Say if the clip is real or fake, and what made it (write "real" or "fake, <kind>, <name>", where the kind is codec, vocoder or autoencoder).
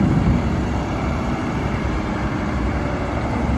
fake, vocoder, BigVGAN v2